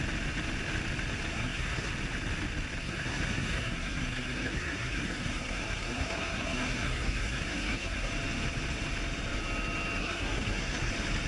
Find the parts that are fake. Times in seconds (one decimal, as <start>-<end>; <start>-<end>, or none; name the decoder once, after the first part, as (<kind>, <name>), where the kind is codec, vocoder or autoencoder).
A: 1.3-1.9 (codec, SNAC); 2.8-8.1; 10.0-10.9